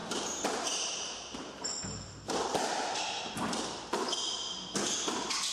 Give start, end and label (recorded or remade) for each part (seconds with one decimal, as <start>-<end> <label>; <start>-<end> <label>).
0.0-3.3 remade; 3.3-5.5 recorded